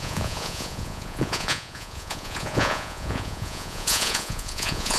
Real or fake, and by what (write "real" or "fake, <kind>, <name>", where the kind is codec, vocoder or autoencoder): fake, vocoder, Vocos